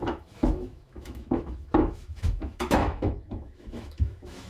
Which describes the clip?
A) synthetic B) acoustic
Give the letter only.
A